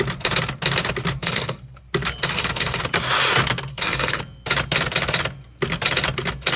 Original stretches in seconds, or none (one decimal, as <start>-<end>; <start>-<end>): 0.0-1.2; 1.8-2.3; 2.8-3.7; 4.2-6.6